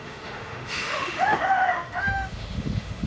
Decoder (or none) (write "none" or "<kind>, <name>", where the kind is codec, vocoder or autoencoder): autoencoder, DAC-VAE